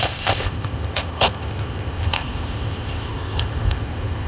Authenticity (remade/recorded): remade